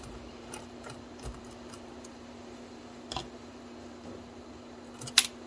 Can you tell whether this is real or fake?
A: fake